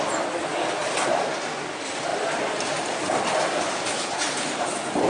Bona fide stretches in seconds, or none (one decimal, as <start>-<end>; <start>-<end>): 0.0-0.8; 1.3-2.1; 3.2-5.1